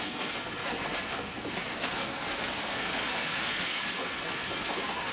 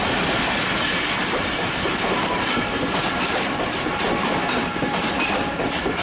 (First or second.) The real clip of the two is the second